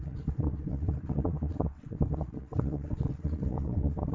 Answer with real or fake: fake